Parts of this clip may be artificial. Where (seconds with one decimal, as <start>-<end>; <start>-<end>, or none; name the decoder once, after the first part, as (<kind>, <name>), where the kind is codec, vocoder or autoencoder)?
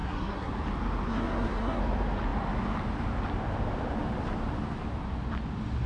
0.0-0.5 (codec, SNAC); 1.1-1.8